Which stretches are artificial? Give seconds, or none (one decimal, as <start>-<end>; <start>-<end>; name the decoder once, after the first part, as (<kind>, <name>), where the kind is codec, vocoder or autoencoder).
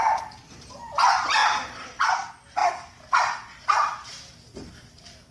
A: none